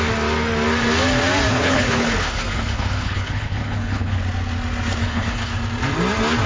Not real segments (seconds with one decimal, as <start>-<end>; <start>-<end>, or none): 1.5-4.2; 5.0-5.6